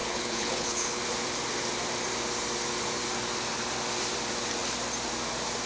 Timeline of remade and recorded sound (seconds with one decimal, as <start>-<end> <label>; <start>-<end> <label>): 0.0-1.0 remade; 1.0-5.7 recorded